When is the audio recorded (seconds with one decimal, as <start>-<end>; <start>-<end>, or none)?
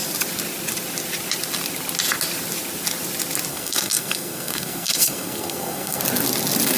0.0-3.5; 6.0-6.8